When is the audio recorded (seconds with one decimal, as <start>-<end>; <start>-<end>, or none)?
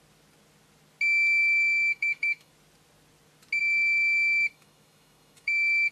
0.0-1.4; 2.5-3.6